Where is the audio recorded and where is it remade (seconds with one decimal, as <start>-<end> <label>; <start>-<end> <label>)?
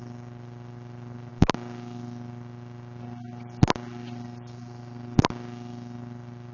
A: 0.0-6.5 recorded